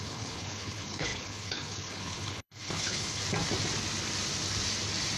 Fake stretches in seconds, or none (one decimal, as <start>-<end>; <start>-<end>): 0.0-3.2

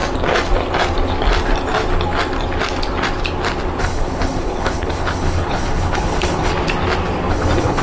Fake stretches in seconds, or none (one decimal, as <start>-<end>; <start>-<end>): 3.8-6.5; 7.3-7.8

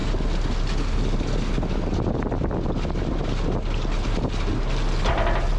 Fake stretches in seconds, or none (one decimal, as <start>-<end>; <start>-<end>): none

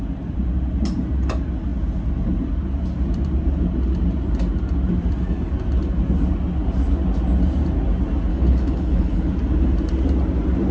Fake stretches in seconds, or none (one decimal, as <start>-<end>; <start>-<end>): 8.3-9.3

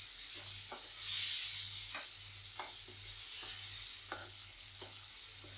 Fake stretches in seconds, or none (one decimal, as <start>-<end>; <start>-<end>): 4.2-5.1

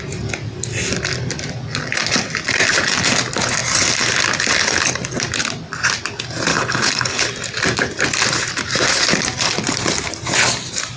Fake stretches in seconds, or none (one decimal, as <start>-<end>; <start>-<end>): 6.5-7.3

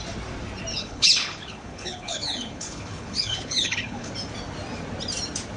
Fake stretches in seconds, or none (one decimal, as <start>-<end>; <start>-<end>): 0.7-4.1

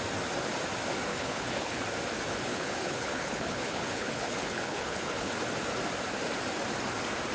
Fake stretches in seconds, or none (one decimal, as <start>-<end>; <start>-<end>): 1.1-1.8; 2.5-5.3